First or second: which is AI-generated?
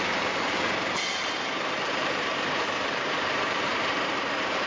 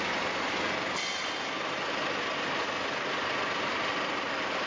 first